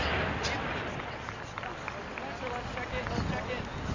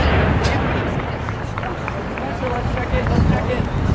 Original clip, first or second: first